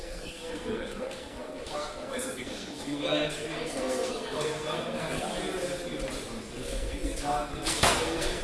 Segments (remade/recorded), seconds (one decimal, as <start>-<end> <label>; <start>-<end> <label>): 0.0-5.3 remade; 5.3-6.4 recorded; 6.4-8.4 remade